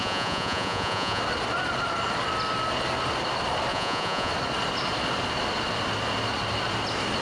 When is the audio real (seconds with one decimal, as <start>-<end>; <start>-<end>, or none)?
1.2-3.7; 4.3-7.2